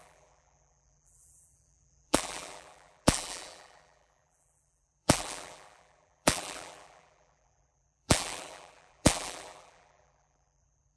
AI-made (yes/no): yes